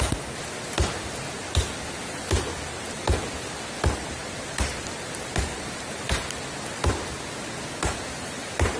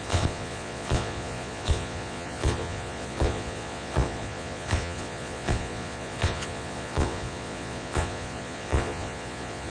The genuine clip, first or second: first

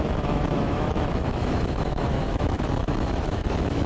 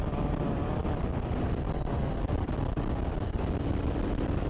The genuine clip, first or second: second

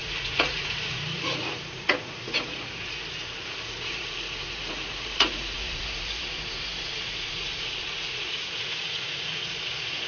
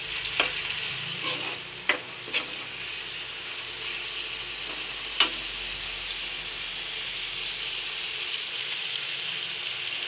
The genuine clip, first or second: second